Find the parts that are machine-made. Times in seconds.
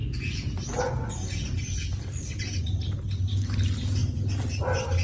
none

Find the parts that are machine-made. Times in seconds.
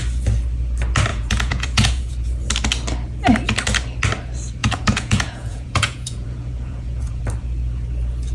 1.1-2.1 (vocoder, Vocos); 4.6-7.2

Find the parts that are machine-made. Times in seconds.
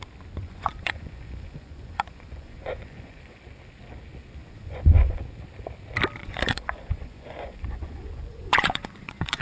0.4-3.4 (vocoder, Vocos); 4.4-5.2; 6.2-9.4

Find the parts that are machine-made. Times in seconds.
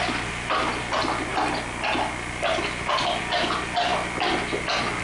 none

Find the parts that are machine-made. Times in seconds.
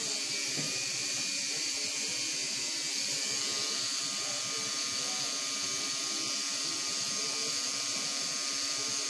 none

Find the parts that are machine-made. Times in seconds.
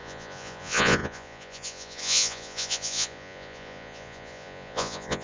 0.0-5.2 (vocoder, Vocos)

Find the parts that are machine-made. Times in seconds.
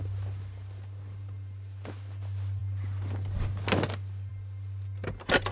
none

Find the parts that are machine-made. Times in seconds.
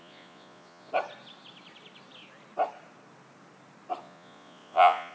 0.0-0.9 (vocoder, Vocos); 4.0-5.1